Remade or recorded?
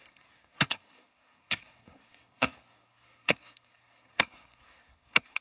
remade